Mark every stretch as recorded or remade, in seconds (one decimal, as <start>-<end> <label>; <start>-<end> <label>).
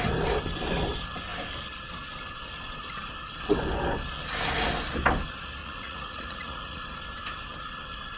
0.0-5.6 recorded; 5.6-6.8 remade; 6.8-8.2 recorded